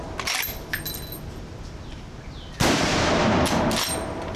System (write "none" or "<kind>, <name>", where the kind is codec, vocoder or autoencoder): none